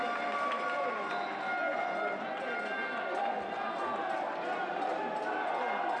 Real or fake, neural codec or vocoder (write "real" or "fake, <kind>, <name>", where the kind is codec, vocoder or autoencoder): real